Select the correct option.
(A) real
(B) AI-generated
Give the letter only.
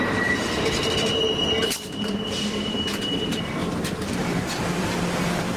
B